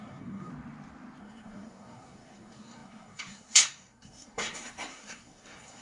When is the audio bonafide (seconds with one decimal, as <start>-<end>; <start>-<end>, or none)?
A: 0.5-1.2